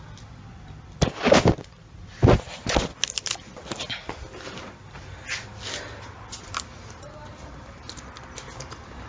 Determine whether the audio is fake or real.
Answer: real